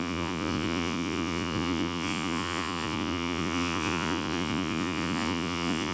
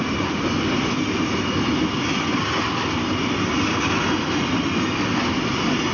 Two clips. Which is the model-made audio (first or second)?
first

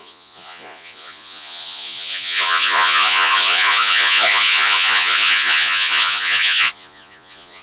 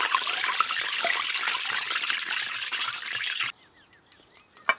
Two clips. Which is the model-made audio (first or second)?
first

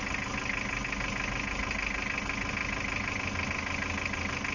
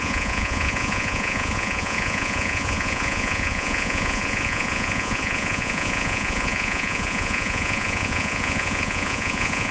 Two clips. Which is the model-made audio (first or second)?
second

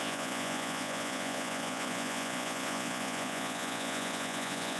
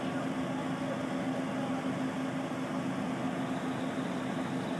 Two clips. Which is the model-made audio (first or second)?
first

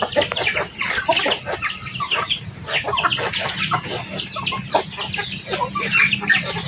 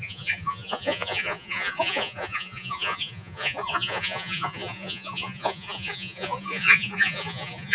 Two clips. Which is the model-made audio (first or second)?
second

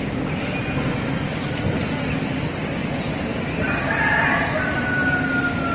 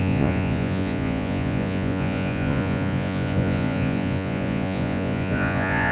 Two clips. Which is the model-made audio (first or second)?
second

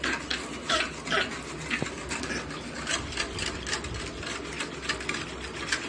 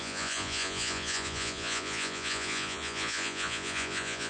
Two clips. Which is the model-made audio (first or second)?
second